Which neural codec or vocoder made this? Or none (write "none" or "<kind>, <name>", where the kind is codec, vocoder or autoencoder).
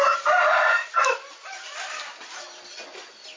none